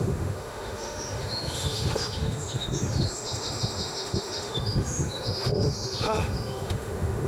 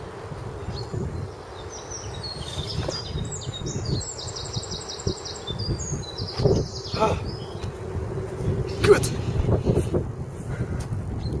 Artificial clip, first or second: first